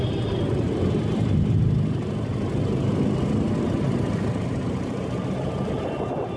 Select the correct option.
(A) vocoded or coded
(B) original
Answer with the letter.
B